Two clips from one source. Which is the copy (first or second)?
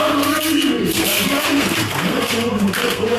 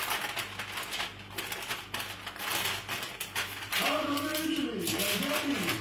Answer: first